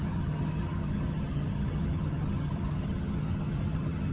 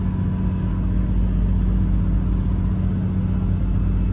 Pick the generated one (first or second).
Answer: first